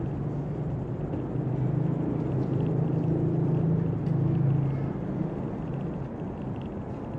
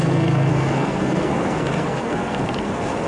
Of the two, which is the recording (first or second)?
first